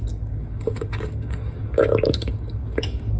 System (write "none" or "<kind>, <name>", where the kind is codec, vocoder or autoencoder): codec, DAC